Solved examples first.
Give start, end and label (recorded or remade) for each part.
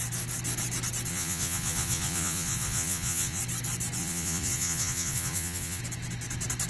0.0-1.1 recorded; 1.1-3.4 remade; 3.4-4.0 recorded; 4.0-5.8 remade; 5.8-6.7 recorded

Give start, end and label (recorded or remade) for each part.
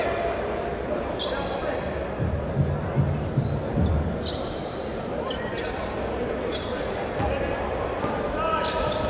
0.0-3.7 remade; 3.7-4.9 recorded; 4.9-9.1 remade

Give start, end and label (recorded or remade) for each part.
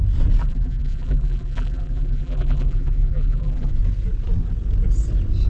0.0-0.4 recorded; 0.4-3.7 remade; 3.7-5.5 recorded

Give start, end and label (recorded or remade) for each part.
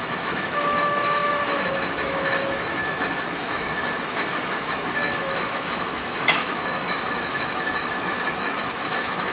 0.0-9.3 remade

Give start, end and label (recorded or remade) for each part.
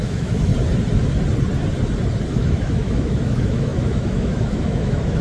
0.0-0.5 remade; 0.5-2.3 recorded; 2.3-5.2 remade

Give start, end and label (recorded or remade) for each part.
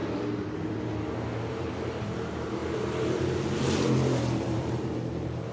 0.0-1.5 recorded; 1.5-5.5 remade